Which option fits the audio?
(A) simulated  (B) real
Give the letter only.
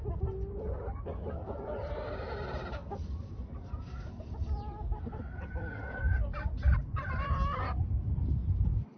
B